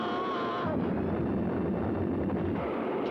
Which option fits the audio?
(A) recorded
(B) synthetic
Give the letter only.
B